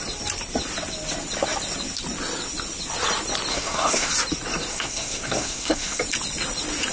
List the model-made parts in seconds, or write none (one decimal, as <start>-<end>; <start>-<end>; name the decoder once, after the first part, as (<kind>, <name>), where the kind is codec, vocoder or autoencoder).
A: 3.5-4.1 (codec, SNAC); 4.7-6.0